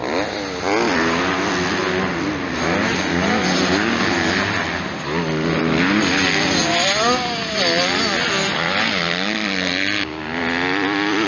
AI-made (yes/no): no